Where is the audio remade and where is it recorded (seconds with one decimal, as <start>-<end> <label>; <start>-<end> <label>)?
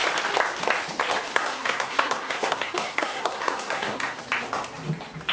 0.0-1.3 recorded; 1.3-4.2 remade; 4.2-5.3 recorded